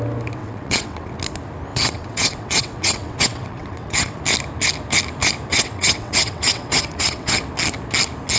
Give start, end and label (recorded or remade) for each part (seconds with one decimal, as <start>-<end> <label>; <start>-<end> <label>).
0.0-0.4 recorded; 0.4-1.1 remade; 1.1-1.7 recorded; 1.7-4.2 remade; 4.2-5.5 recorded; 5.5-7.4 remade; 7.4-8.4 recorded